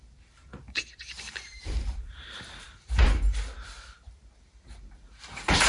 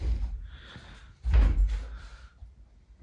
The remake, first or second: first